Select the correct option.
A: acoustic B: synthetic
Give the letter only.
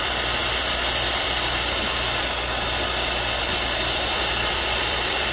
B